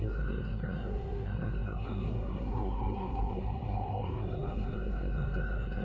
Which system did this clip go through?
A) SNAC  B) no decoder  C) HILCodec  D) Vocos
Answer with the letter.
A